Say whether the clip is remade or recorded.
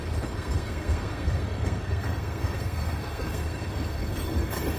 remade